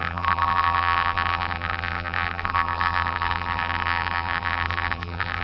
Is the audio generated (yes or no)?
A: yes